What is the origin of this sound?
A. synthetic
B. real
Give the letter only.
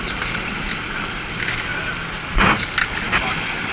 B